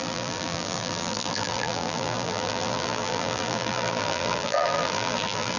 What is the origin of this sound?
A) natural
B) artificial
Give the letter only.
B